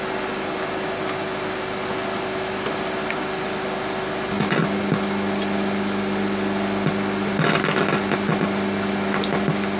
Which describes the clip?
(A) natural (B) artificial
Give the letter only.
A